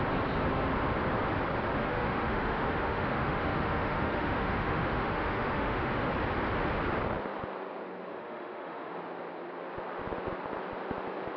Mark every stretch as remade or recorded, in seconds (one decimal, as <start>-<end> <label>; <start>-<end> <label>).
0.0-1.8 recorded; 1.8-6.1 remade; 6.1-8.1 recorded; 8.1-8.9 remade; 8.9-11.4 recorded